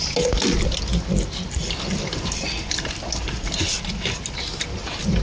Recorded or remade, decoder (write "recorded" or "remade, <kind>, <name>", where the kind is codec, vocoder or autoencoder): recorded